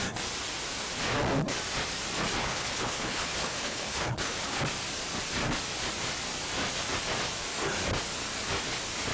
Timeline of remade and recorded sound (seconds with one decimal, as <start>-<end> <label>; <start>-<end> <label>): 0.0-2.4 recorded; 2.4-4.6 remade; 4.6-9.1 recorded